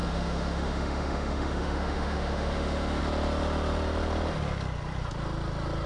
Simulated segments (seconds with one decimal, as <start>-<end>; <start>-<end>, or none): 0.0-3.0